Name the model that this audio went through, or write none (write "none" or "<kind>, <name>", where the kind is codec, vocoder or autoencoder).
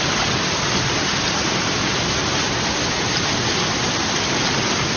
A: none